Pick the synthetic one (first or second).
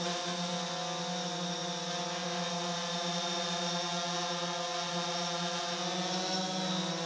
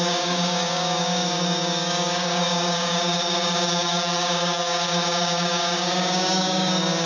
second